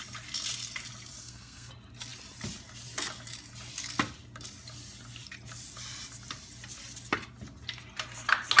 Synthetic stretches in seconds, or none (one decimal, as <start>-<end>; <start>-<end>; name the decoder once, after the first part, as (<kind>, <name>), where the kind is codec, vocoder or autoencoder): 1.2-1.7 (codec, SNAC)